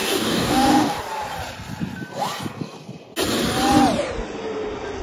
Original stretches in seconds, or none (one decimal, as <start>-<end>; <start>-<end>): 1.0-5.0